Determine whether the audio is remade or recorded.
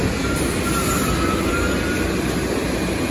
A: recorded